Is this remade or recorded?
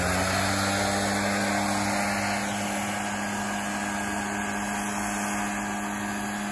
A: recorded